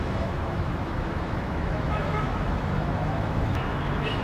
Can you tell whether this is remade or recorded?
remade